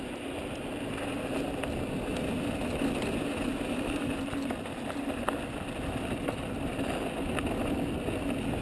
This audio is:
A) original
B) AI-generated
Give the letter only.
A